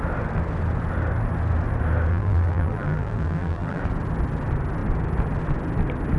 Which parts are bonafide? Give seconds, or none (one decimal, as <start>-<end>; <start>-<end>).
0.0-2.1; 3.8-6.2